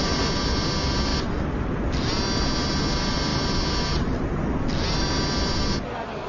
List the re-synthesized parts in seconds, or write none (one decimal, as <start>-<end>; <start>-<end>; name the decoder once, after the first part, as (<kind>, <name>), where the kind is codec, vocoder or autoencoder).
none